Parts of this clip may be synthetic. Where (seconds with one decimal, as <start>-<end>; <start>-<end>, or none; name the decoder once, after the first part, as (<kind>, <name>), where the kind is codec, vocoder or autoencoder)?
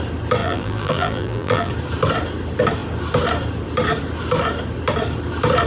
0.4-1.7 (vocoder, BigVGAN v2)